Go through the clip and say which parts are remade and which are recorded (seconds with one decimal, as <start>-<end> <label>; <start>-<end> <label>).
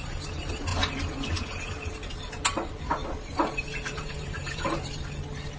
0.0-5.6 recorded